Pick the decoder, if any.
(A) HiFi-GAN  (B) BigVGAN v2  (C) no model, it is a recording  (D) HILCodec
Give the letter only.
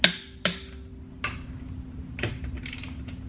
C